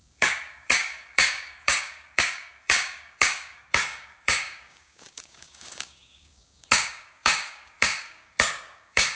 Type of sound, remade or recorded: remade